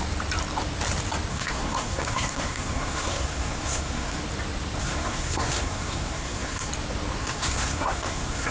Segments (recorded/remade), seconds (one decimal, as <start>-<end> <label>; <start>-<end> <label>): 0.0-1.3 recorded; 1.3-4.2 remade; 4.2-4.8 recorded; 4.8-6.7 remade; 6.7-7.2 recorded; 7.2-8.5 remade

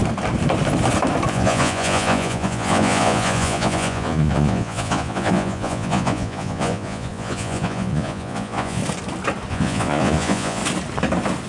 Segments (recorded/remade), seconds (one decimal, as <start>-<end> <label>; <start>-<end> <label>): 0.0-1.3 recorded; 1.3-8.8 remade; 8.8-9.5 recorded; 9.5-10.6 remade; 10.6-11.5 recorded

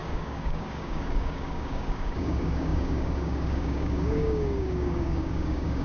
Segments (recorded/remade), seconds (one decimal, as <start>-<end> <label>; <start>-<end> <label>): 0.0-5.8 remade

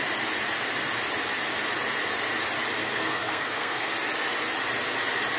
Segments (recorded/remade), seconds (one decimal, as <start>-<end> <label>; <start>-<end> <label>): 0.0-2.8 recorded; 2.8-3.9 remade; 3.9-5.4 recorded